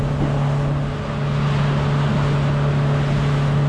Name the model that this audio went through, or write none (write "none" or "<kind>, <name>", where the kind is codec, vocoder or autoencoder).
none